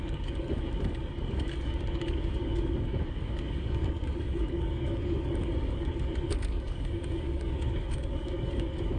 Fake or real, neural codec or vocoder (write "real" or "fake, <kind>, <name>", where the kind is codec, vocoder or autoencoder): fake, codec, DAC